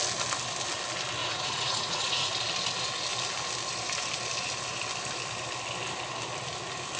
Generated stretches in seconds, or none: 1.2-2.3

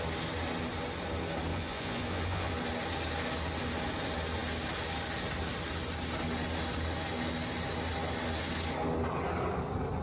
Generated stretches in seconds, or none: 1.5-2.5

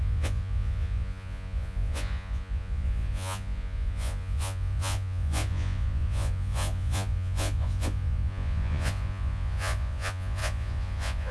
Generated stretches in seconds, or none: 0.0-11.3

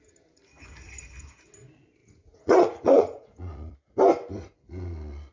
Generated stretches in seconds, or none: 2.0-3.7

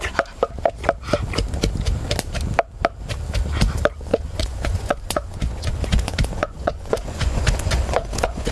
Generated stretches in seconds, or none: 4.1-8.5

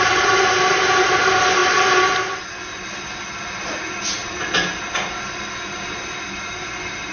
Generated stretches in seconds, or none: none

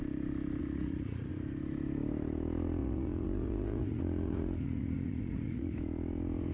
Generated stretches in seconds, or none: 0.6-1.3; 2.8-5.7